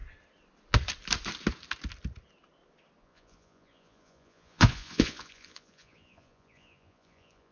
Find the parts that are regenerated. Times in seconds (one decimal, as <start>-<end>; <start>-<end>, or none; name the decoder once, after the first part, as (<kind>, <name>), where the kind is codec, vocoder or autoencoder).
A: 3.0-7.5 (vocoder, Vocos)